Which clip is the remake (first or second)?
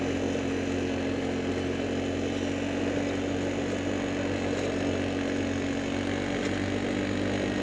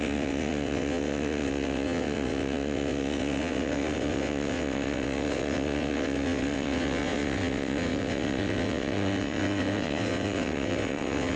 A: second